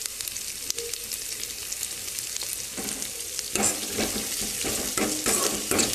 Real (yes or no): yes